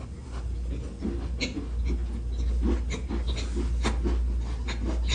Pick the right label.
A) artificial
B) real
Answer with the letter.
B